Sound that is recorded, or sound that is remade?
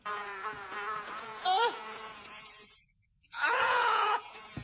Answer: remade